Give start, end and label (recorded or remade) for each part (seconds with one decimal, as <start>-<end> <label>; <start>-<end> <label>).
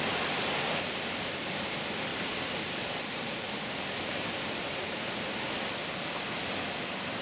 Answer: 0.0-2.1 recorded; 2.1-4.4 remade; 4.4-7.2 recorded